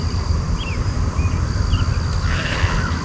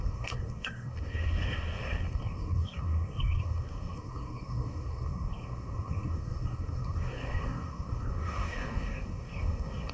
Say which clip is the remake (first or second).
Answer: second